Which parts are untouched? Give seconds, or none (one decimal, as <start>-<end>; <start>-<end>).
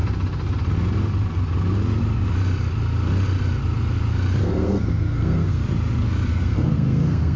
0.0-4.4; 5.6-6.3